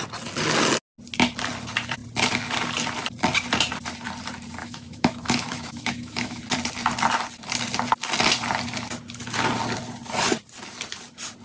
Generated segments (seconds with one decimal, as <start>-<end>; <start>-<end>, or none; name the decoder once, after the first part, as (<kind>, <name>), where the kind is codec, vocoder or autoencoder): 4.6-6.4 (autoencoder, DAC-VAE)